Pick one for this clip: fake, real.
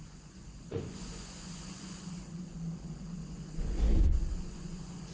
fake